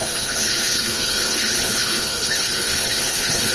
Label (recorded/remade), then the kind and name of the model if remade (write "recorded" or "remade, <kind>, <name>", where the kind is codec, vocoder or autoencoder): remade, codec, HILCodec